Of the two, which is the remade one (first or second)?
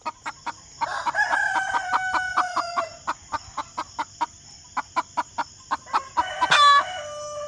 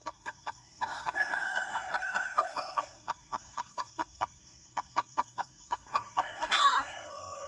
second